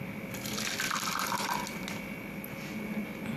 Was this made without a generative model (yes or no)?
yes